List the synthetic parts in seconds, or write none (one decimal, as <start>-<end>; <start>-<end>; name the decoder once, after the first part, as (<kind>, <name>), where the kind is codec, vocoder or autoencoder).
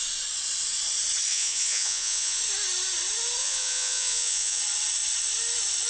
1.3-2.4 (vocoder, Vocos); 3.4-4.6